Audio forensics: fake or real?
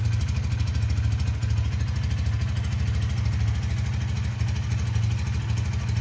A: real